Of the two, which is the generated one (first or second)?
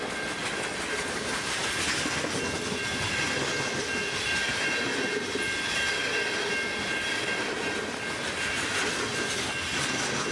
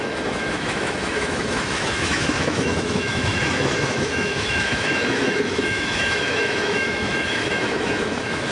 second